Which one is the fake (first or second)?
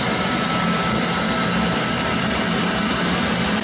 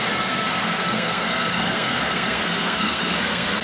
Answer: second